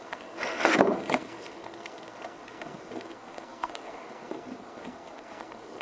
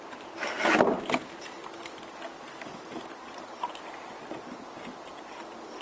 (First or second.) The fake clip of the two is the first